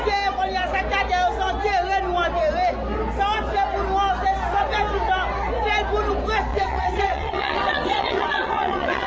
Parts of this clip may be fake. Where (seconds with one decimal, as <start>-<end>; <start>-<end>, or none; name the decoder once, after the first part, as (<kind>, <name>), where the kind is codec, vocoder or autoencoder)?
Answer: 6.5-9.1 (vocoder, WaveNeXt)